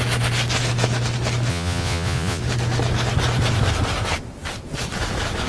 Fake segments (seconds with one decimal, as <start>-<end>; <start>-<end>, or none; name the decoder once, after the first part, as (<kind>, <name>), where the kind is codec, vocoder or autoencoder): 1.5-2.4 (vocoder, Vocos)